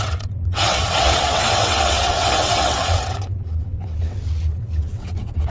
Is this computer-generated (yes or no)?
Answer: yes